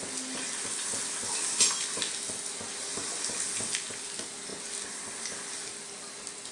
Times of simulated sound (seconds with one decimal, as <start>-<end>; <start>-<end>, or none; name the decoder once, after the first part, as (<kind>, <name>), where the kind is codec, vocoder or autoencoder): none